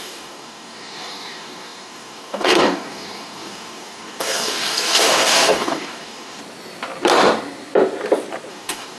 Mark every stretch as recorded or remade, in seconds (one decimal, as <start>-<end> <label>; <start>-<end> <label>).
0.0-6.4 remade; 6.4-8.5 recorded; 8.5-9.0 remade